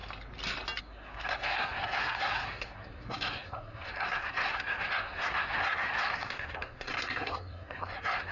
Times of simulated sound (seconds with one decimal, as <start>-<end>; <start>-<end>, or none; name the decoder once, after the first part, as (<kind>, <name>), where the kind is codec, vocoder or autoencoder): 0.8-8.3 (codec, SNAC)